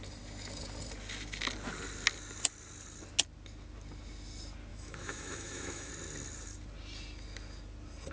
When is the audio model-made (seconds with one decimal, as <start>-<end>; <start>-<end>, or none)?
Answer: 4.7-5.9